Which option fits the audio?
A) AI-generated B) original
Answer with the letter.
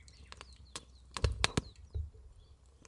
B